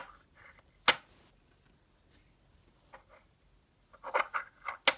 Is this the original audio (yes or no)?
yes